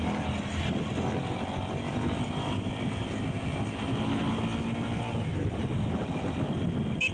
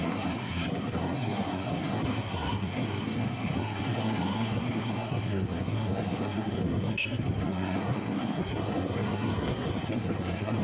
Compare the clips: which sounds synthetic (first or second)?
second